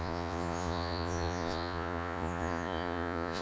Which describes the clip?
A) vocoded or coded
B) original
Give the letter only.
A